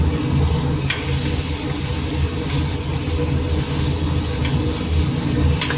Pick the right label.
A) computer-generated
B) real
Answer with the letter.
B